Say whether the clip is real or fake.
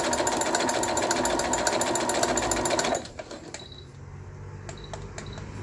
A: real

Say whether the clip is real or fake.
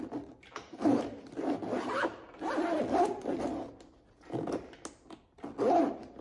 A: real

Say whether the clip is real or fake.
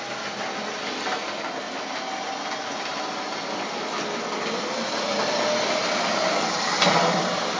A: real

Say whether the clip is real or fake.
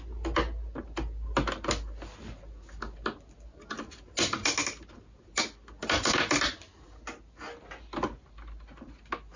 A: real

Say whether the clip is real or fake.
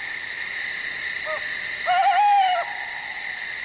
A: real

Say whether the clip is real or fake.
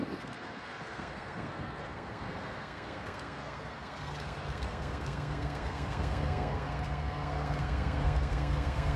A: fake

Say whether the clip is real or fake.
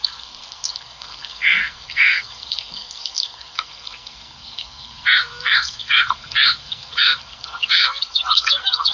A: fake